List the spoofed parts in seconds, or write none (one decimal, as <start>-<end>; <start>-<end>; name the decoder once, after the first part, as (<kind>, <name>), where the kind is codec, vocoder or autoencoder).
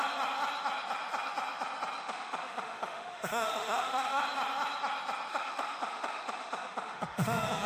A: 2.0-4.2 (autoencoder, DAC-VAE); 5.3-7.7